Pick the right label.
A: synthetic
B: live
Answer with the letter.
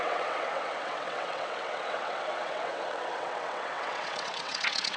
A